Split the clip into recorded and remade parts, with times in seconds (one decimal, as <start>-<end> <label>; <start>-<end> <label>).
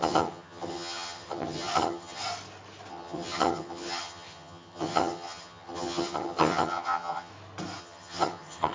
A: 0.0-2.2 remade; 2.2-2.9 recorded; 2.9-7.3 remade; 7.3-7.8 recorded; 7.8-8.7 remade